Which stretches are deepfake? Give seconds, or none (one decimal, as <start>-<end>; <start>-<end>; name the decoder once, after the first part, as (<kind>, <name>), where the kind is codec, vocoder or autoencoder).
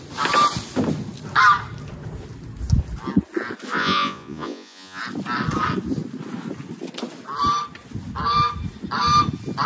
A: 3.8-5.0 (vocoder, Vocos)